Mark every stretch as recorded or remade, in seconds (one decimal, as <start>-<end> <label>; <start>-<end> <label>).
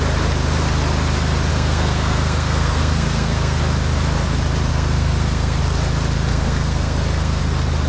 0.0-1.5 recorded; 1.5-3.6 remade; 3.6-4.7 recorded; 4.7-5.6 remade; 5.6-6.3 recorded; 6.3-7.4 remade; 7.4-7.9 recorded